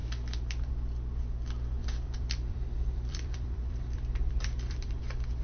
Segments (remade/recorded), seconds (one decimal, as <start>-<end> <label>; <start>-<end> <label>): 0.0-1.8 recorded; 1.8-5.0 remade; 5.0-5.4 recorded